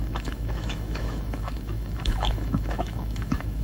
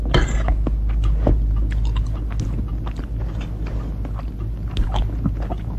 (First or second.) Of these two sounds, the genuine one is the second